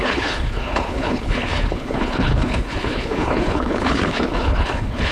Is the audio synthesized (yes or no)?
yes